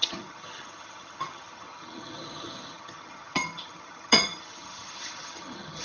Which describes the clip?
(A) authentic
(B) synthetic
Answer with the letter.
B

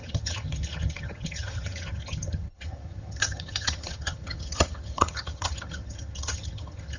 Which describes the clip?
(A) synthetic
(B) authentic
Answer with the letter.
A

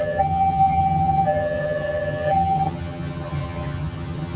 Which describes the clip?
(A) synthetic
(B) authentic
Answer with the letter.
A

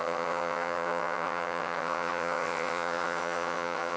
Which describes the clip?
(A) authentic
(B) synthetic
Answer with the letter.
B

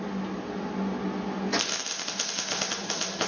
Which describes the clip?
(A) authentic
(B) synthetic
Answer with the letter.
A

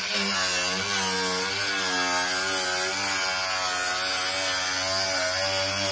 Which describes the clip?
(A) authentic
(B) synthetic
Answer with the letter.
A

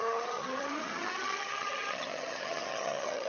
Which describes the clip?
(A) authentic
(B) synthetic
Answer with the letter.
B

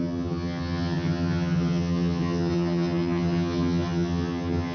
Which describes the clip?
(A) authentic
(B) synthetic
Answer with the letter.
B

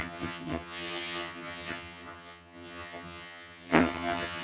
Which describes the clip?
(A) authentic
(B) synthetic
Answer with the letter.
B